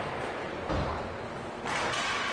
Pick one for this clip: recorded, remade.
recorded